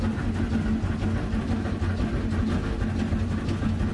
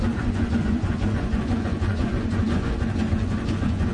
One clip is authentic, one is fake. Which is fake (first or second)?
second